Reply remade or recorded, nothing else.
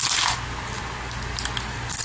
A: recorded